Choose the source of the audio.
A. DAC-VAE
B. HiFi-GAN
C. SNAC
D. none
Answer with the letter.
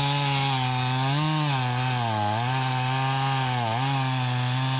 D